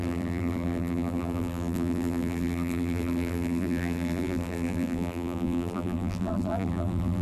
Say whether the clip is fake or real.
fake